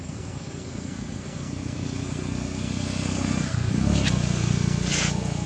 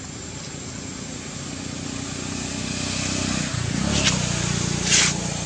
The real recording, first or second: second